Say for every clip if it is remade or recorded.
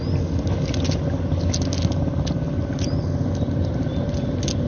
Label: recorded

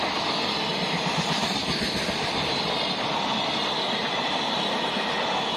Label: remade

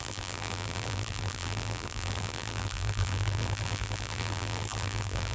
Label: remade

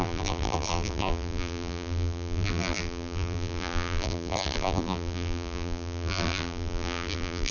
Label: remade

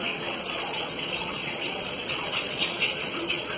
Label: remade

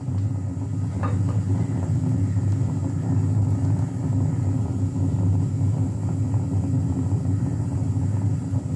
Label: recorded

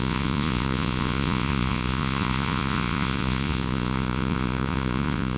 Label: remade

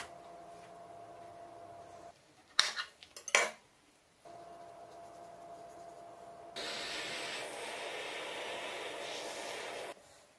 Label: recorded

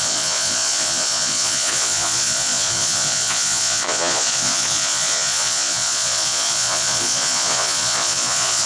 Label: remade